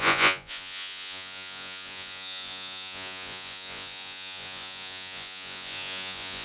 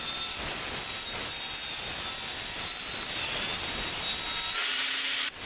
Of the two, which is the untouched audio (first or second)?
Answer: second